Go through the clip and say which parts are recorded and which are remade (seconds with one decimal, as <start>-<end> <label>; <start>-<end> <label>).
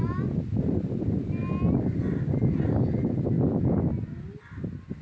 0.0-5.0 recorded